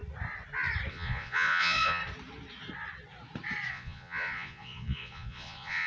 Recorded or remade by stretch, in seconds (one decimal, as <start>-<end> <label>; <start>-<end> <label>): 0.0-0.9 recorded; 0.9-2.0 remade; 2.0-3.7 recorded; 3.7-5.9 remade

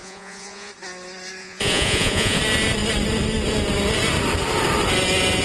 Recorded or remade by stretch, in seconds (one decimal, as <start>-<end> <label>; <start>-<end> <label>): 0.0-0.7 remade; 0.7-1.4 recorded; 1.4-2.4 remade; 2.4-5.4 recorded

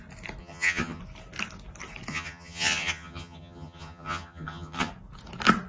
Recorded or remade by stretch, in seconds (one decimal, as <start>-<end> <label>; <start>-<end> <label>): 0.0-0.4 recorded; 0.4-1.0 remade; 1.0-2.1 recorded; 2.1-4.9 remade; 4.9-5.7 recorded

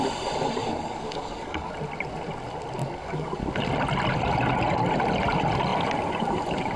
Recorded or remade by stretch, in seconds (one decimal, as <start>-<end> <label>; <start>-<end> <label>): 0.0-0.6 recorded; 0.6-1.7 remade; 1.7-2.8 recorded; 2.8-3.4 remade; 3.4-6.8 recorded

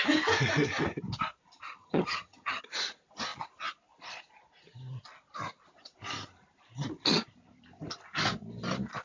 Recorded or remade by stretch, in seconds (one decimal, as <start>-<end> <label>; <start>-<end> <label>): 0.0-1.8 recorded; 1.8-2.6 remade; 2.6-9.0 recorded